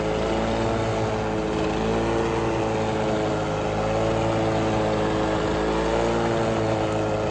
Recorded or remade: recorded